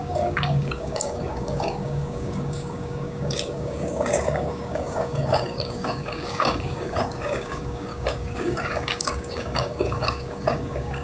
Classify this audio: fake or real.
fake